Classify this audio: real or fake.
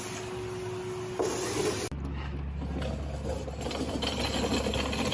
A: real